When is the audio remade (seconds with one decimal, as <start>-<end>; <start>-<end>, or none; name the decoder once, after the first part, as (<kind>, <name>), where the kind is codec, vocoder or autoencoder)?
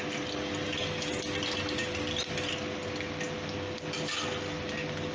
none